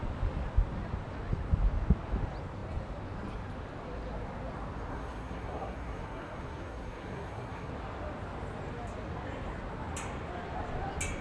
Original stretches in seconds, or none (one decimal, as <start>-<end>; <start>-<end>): 0.0-4.9; 7.7-11.2